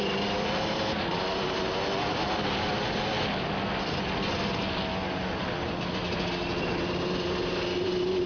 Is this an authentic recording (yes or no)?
yes